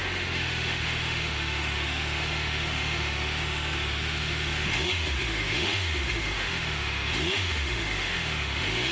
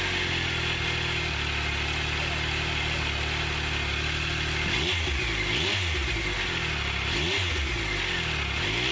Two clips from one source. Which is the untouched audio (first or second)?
second